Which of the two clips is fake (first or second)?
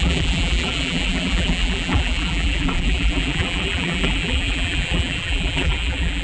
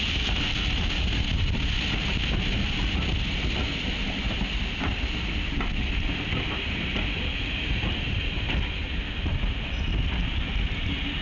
first